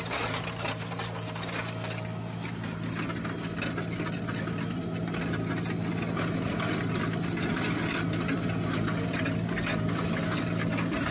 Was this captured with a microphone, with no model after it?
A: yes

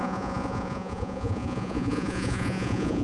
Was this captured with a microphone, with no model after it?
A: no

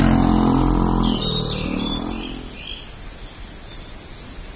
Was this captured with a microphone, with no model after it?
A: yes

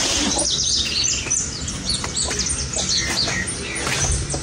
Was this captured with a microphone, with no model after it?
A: yes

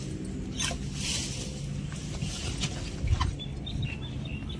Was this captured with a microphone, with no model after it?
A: yes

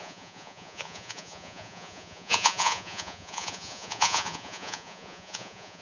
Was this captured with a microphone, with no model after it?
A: no